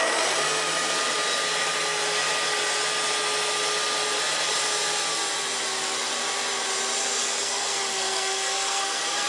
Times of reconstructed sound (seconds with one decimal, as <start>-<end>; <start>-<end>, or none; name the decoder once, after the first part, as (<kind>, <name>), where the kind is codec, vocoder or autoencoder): 7.2-9.3 (codec, SNAC)